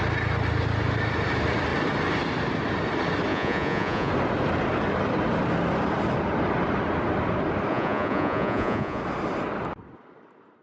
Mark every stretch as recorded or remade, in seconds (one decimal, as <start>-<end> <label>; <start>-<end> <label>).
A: 0.0-3.3 recorded; 3.3-4.1 remade; 4.1-7.7 recorded; 7.7-9.0 remade; 9.0-10.6 recorded